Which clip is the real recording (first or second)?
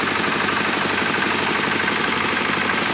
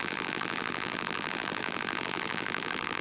first